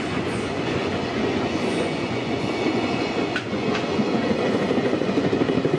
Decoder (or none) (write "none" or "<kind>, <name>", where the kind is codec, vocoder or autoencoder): vocoder, Vocos